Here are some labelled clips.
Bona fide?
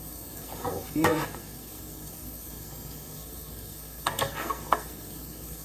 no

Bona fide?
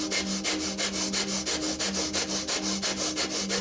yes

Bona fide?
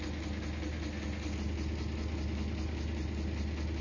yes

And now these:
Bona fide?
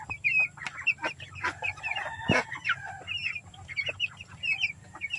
yes